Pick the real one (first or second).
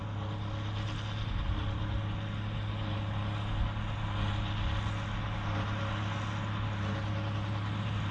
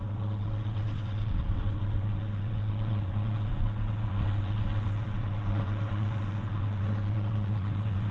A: first